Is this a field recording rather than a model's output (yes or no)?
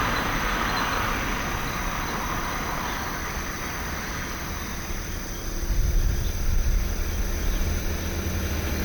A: yes